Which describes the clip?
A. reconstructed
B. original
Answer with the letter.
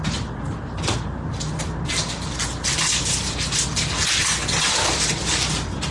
A